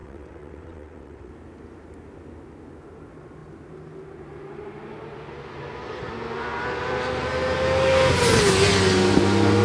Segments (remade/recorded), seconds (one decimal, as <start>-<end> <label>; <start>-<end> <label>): 0.0-1.3 remade; 1.3-9.6 recorded

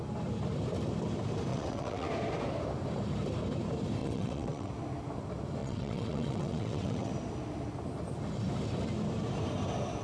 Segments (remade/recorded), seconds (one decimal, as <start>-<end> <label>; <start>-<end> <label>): 0.0-1.5 recorded; 1.5-2.1 remade; 2.1-4.0 recorded; 4.0-4.7 remade; 4.7-5.6 recorded; 5.6-7.1 remade; 7.1-10.0 recorded

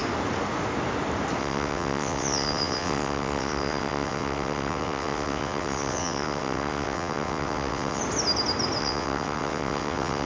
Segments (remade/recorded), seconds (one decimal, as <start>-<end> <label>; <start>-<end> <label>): 0.0-1.4 recorded; 1.4-8.0 remade; 8.0-8.8 recorded; 8.8-10.3 remade

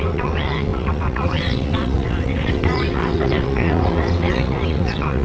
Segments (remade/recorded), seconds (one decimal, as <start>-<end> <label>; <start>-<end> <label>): 0.0-5.2 remade

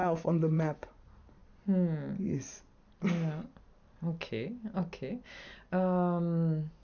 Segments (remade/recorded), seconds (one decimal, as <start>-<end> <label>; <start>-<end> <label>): 0.0-0.9 remade; 0.9-6.8 recorded